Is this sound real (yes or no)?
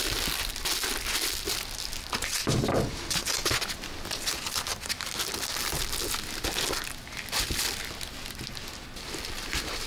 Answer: yes